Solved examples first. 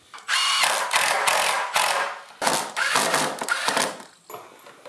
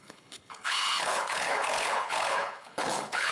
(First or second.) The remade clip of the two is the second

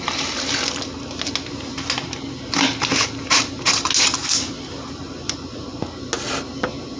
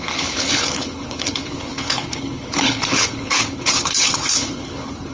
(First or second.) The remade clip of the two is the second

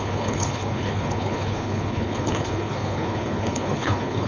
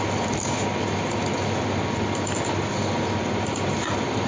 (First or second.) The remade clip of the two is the first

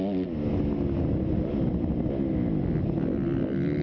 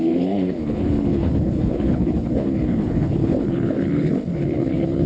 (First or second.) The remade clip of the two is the second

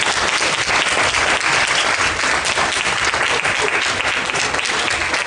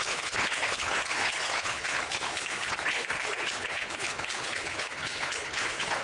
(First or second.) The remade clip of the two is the second